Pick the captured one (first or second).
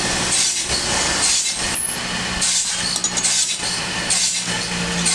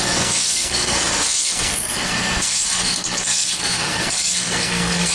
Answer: first